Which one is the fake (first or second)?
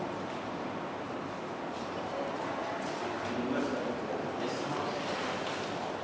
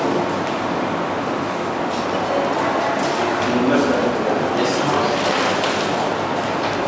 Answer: first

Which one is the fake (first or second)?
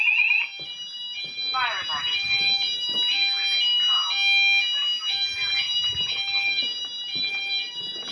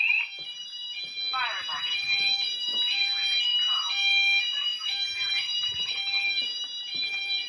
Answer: second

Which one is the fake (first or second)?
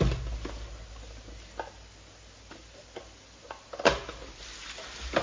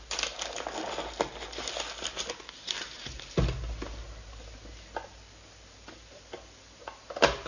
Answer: first